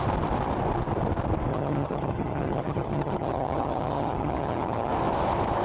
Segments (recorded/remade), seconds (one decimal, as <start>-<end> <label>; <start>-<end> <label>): 0.0-1.5 recorded; 1.5-4.9 remade; 4.9-5.6 recorded